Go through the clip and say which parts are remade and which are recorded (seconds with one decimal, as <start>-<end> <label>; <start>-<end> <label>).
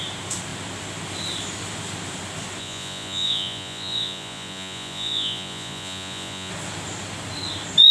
0.0-2.6 recorded; 2.6-6.5 remade; 6.5-7.9 recorded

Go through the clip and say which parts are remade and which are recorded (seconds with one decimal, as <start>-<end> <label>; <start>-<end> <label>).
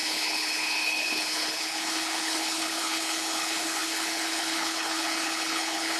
0.0-6.0 remade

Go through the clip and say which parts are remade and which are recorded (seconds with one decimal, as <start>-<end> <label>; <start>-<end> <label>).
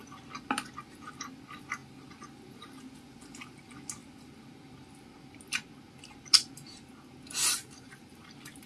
0.0-7.6 recorded; 7.6-8.7 remade